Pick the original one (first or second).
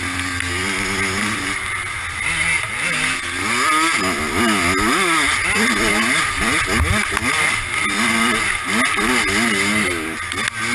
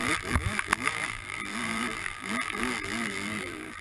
first